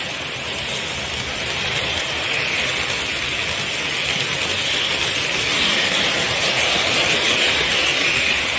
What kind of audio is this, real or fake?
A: real